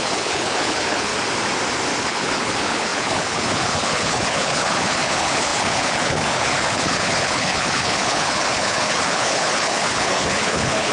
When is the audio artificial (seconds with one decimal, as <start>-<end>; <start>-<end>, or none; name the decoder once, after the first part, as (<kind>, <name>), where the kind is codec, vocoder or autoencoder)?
0.0-1.1 (codec, HILCodec); 2.0-10.9